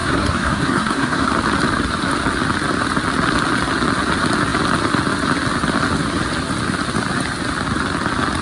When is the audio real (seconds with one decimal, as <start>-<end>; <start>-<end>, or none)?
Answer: 1.3-8.4